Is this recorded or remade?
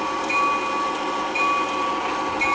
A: recorded